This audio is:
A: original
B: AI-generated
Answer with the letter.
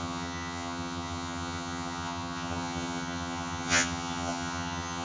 B